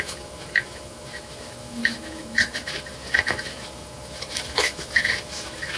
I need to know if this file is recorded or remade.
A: remade